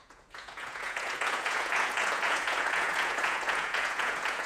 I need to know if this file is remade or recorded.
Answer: remade